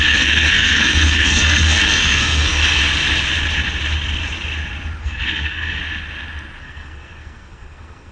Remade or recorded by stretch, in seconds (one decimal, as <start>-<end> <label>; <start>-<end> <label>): 0.0-2.8 remade; 2.8-5.0 recorded; 5.0-5.8 remade; 5.8-6.6 recorded; 6.6-8.1 remade